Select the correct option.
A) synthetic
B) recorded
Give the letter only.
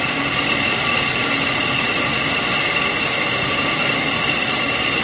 B